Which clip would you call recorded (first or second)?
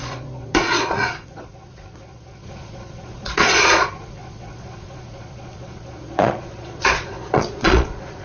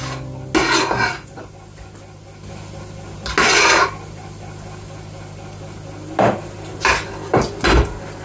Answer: second